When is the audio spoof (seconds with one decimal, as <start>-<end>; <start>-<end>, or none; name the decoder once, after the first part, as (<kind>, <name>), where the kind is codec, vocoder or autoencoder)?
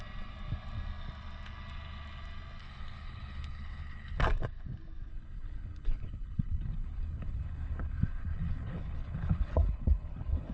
2.6-4.2 (codec, HILCodec); 5.1-10.5